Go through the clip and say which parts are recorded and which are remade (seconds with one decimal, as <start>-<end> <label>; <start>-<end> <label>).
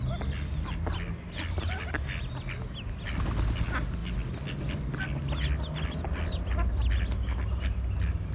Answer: 0.0-8.3 recorded